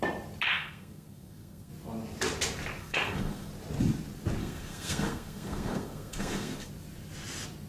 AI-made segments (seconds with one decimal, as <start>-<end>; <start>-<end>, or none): 0.5-1.7; 2.8-3.5; 4.4-6.7